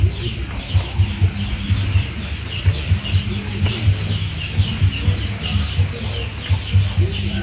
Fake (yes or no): no